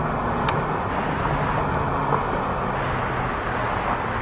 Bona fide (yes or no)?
yes